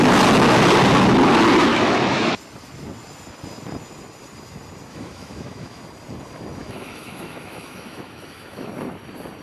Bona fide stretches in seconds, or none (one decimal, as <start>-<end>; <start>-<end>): 0.0-1.7; 2.4-4.9; 5.8-6.6; 8.7-9.4